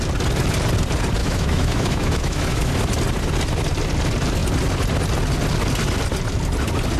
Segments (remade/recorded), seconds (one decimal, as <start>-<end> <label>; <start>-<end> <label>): 0.0-1.2 recorded; 1.2-2.7 remade; 2.7-7.0 recorded